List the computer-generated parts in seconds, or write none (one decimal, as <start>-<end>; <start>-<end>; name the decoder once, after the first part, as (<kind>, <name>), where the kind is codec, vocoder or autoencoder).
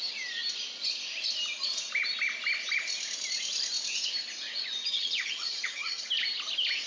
4.8-6.1 (vocoder, HiFi-GAN)